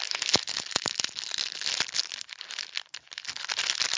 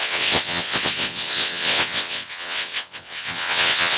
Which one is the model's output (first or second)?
second